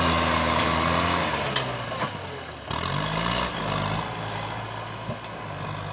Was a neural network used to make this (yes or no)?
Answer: no